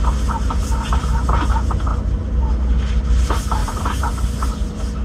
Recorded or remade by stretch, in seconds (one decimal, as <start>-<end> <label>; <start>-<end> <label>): 0.0-3.6 recorded; 3.6-4.1 remade; 4.1-5.0 recorded